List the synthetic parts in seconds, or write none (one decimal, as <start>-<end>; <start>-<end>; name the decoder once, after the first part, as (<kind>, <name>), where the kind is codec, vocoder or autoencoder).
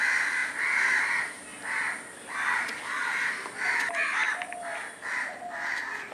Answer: none